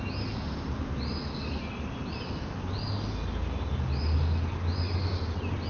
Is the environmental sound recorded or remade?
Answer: recorded